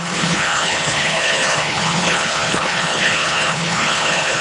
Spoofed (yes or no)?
yes